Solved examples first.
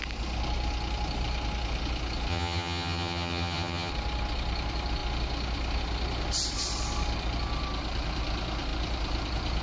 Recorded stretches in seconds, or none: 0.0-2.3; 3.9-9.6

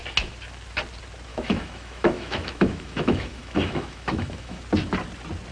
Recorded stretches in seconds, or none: 0.0-1.3; 4.6-5.5

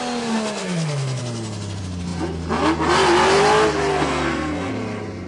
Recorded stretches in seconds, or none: 0.0-0.6; 1.2-3.9; 4.7-5.3

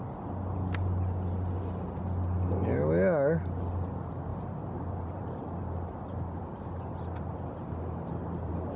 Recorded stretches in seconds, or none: 0.0-4.3

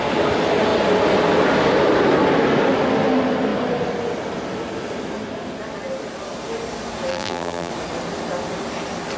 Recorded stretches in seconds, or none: 0.0-7.1; 7.7-9.2

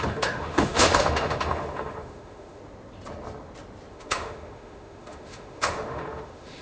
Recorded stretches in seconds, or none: 2.6-3.9

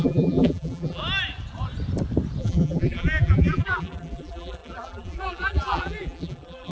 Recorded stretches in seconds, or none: 1.0-2.4